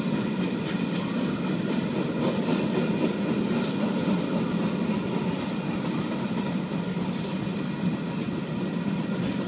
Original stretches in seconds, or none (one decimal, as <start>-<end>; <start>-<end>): 0.0-9.5